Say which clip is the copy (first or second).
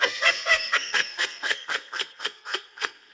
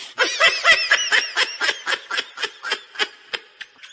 first